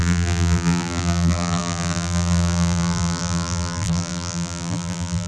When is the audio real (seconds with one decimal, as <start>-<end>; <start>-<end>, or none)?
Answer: none